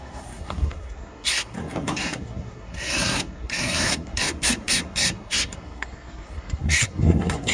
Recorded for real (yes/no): no